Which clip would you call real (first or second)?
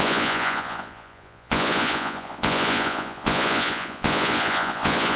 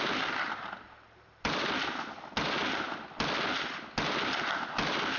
second